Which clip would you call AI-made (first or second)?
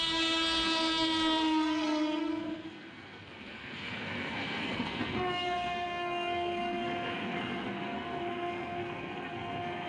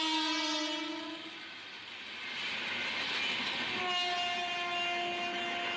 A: first